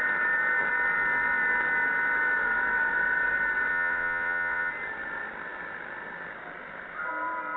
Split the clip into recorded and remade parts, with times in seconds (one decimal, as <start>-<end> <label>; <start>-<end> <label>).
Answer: 0.0-3.7 recorded; 3.7-4.7 remade; 4.7-7.6 recorded